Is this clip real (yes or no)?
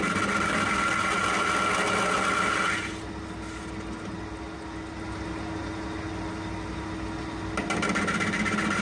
yes